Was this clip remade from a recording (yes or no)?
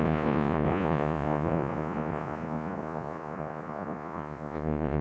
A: yes